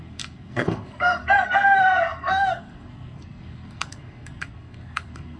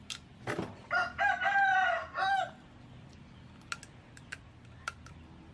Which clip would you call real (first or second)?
second